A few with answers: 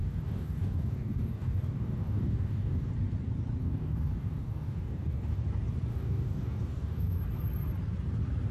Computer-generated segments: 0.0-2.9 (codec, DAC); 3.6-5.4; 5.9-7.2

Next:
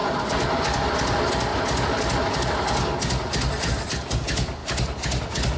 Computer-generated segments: none